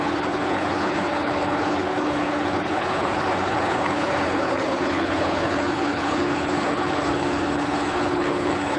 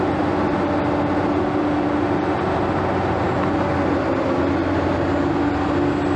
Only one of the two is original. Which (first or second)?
second